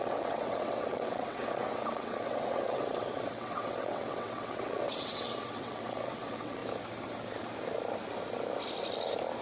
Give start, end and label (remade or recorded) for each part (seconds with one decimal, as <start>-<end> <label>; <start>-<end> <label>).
0.0-6.6 remade; 6.6-9.4 recorded